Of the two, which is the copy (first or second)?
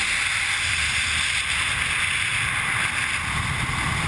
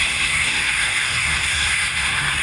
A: second